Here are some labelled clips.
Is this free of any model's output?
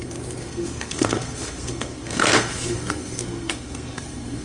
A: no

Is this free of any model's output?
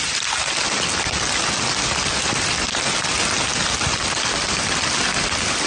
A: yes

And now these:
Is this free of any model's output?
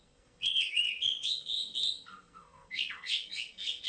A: no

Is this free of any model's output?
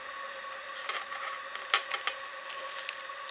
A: yes